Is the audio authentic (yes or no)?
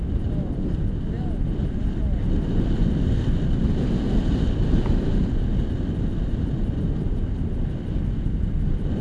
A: yes